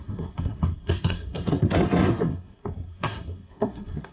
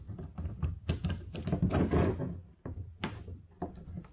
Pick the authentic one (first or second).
second